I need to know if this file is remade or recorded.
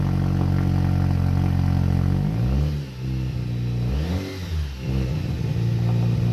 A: recorded